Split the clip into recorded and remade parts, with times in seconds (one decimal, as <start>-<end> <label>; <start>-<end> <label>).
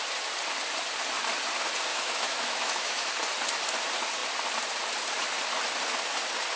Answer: 0.0-1.9 recorded; 1.9-3.1 remade; 3.1-6.6 recorded